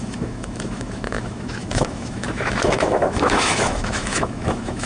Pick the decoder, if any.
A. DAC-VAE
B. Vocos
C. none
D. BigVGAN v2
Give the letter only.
A